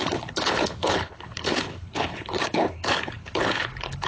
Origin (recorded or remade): remade